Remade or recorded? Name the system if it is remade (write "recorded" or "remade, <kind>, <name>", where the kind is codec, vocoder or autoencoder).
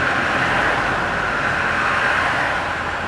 recorded